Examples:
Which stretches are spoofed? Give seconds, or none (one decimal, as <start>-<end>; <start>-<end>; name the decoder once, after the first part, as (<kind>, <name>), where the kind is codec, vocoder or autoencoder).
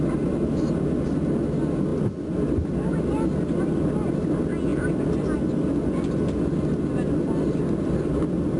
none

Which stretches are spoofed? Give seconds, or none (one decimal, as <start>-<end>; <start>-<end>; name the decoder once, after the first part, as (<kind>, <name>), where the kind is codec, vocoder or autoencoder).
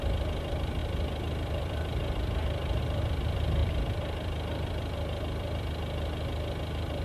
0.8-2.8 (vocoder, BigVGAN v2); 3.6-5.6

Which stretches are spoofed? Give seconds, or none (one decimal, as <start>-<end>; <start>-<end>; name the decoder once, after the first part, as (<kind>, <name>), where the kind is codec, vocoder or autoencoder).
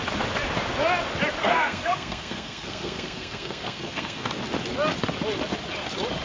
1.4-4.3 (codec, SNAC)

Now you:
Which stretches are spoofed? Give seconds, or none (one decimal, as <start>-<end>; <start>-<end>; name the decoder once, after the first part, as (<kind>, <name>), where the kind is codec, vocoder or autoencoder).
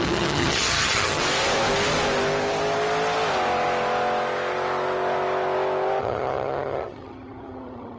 0.0-1.2 (vocoder, HiFi-GAN); 6.0-8.0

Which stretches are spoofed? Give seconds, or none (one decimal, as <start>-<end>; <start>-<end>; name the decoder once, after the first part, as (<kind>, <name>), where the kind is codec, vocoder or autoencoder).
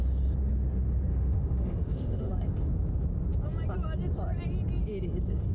1.1-2.3 (autoencoder, DAC-VAE)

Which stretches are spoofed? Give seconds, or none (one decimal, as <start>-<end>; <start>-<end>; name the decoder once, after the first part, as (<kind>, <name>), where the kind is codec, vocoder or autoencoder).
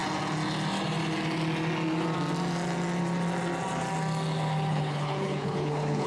4.7-6.1 (codec, HILCodec)